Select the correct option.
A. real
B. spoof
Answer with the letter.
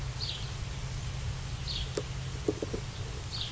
A